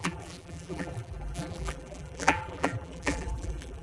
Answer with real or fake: fake